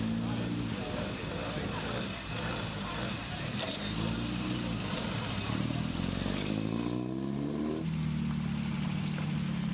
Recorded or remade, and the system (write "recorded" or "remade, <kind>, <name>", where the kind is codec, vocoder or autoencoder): recorded